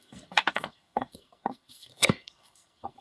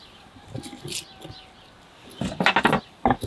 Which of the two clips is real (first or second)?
second